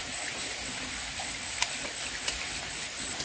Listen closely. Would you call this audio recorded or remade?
recorded